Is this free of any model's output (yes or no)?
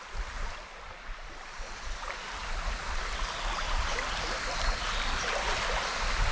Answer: yes